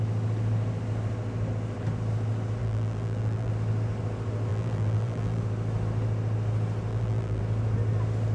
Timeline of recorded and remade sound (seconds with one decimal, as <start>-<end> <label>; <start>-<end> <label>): 0.0-2.6 recorded; 2.6-3.5 remade; 3.5-4.5 recorded; 4.5-5.4 remade; 5.4-6.9 recorded; 6.9-7.4 remade; 7.4-8.3 recorded